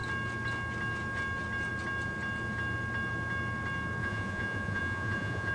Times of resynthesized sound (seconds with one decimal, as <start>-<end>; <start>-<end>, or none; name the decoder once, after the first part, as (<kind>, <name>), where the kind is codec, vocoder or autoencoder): 4.0-5.5 (vocoder, Vocos)